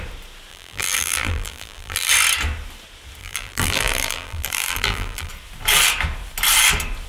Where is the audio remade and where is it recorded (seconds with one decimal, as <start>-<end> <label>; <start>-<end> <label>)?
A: 0.0-0.5 recorded; 0.5-2.1 remade; 2.1-3.2 recorded; 3.2-5.3 remade; 5.3-7.1 recorded